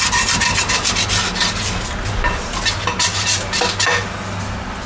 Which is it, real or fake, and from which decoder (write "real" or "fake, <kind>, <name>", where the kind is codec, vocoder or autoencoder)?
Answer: real